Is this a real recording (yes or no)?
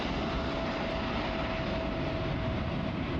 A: yes